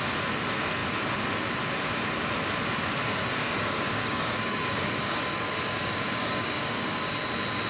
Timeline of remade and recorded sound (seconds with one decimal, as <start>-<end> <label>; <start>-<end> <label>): 0.0-3.3 recorded; 3.3-7.1 remade; 7.1-7.7 recorded

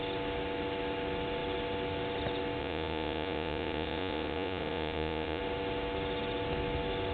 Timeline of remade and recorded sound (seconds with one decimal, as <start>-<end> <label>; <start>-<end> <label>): 0.0-2.6 recorded; 2.6-5.4 remade; 5.4-7.1 recorded

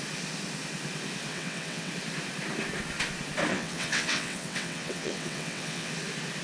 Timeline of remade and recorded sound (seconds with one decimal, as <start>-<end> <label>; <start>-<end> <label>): 0.0-1.3 recorded; 1.3-1.9 remade; 1.9-3.5 recorded; 3.5-5.9 remade; 5.9-6.4 recorded

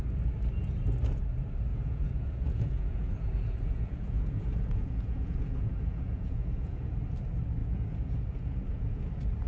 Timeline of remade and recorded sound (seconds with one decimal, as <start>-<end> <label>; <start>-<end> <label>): 0.0-1.7 recorded; 1.7-6.9 remade; 6.9-7.6 recorded; 7.6-9.0 remade; 9.0-9.5 recorded

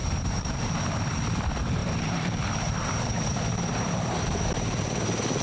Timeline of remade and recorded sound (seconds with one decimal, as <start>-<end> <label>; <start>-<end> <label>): 0.0-0.7 remade; 0.7-1.8 recorded; 1.8-4.8 remade; 4.8-5.4 recorded

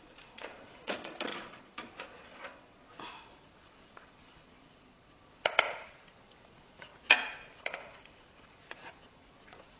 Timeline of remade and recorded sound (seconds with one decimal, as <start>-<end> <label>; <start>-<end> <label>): 0.0-6.9 remade; 6.9-7.6 recorded; 7.6-9.8 remade